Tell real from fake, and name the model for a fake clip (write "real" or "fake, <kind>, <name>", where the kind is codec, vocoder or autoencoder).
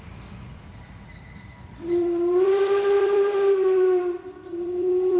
fake, vocoder, BigVGAN v2